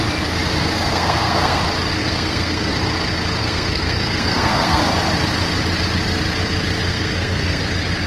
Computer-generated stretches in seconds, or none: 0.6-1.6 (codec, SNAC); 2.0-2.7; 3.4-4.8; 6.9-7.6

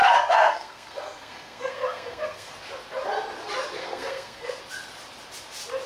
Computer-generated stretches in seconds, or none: 0.0-2.5 (codec, SNAC); 3.8-4.6

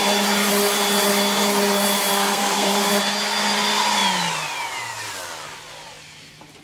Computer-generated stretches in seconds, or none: 2.1-2.9 (codec, SNAC)

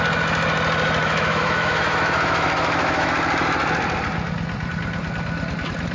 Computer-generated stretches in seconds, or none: 1.0-3.1 (autoencoder, DAC-VAE)

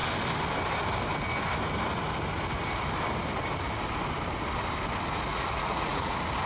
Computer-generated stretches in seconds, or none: 5.3-6.1 (vocoder, Vocos)

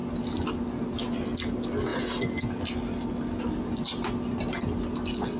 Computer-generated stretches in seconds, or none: none

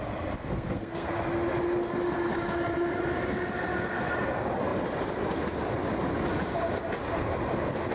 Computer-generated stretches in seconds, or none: 0.5-1.1 (codec, SNAC)

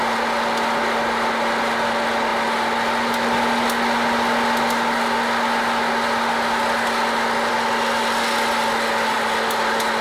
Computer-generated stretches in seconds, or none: none